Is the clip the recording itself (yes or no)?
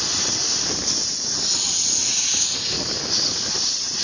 yes